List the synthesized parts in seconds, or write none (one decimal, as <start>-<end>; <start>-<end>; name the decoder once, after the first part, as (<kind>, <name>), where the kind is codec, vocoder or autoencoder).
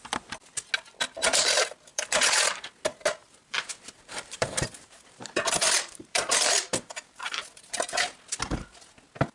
1.9-2.7 (vocoder, BigVGAN v2); 3.2-7.4